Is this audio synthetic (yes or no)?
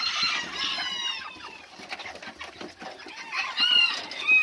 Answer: no